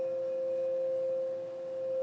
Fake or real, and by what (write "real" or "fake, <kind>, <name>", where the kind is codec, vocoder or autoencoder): real